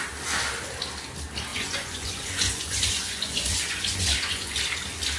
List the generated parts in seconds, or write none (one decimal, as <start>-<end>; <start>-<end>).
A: 1.5-4.6

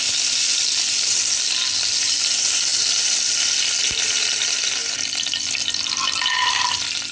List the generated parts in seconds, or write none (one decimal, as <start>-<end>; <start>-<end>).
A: none

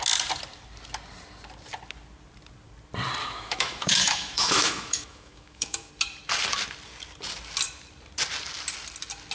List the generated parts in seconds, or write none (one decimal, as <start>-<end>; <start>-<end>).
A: 3.2-5.9

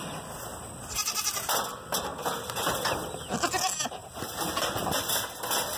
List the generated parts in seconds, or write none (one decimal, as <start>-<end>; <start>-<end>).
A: 1.0-2.4; 4.0-5.3

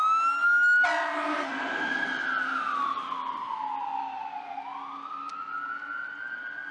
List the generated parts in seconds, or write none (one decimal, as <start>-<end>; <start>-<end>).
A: none

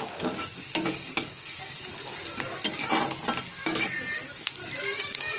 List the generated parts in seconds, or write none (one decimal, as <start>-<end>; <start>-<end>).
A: 0.0-2.8; 3.4-5.4